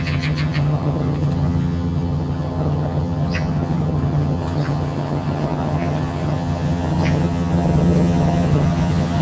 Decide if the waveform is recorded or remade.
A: remade